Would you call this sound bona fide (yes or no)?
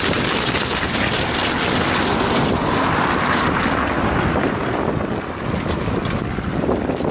no